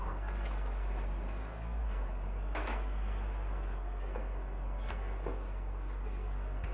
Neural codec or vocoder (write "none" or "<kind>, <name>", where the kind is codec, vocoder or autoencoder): codec, SNAC